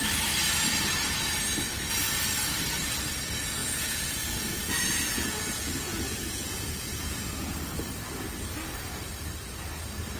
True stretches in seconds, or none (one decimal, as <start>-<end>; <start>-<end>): 0.0-3.6; 7.9-10.2